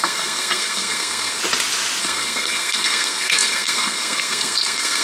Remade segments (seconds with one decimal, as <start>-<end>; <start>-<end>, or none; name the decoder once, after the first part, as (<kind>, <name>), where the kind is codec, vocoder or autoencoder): 0.0-1.4 (codec, SNAC); 2.0-5.0